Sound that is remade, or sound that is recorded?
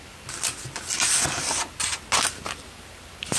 recorded